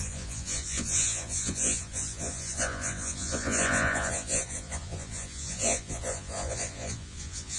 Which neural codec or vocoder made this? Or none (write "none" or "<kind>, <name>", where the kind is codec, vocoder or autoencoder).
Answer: vocoder, Vocos